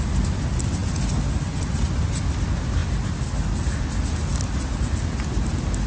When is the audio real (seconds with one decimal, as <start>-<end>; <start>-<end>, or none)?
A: 0.0-5.9